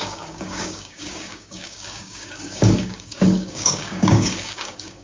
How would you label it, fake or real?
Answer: fake